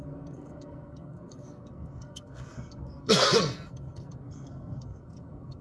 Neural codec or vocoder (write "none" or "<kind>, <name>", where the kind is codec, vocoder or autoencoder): codec, SNAC